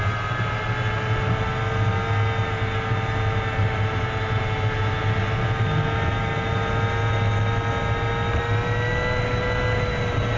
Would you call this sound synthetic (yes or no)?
no